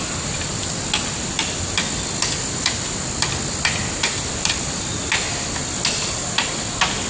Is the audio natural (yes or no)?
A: yes